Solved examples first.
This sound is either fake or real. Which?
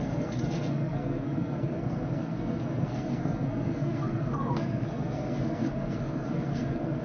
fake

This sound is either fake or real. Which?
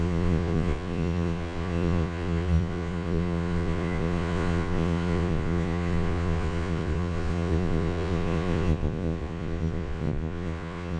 fake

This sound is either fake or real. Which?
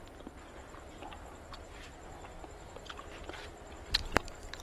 real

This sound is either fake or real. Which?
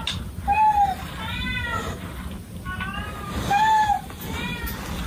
real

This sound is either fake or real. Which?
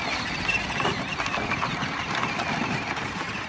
real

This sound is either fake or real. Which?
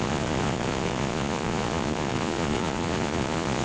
fake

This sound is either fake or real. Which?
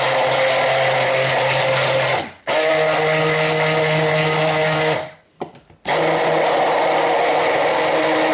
real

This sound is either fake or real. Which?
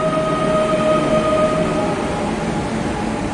real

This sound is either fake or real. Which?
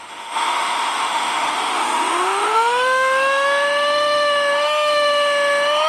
fake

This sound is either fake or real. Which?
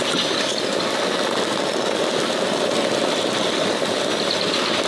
real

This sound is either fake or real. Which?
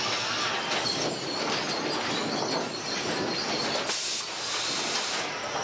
real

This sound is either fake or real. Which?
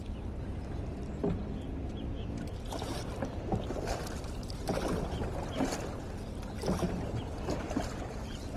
real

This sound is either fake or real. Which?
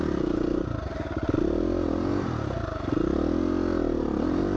real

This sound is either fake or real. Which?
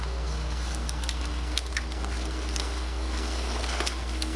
fake